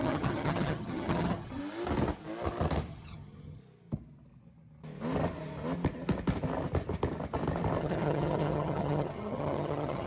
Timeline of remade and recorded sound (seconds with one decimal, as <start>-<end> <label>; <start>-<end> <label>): 0.0-1.6 remade; 1.6-2.9 recorded; 2.9-3.6 remade; 3.6-7.8 recorded; 7.8-10.1 remade